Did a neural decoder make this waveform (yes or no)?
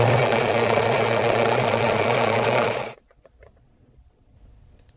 yes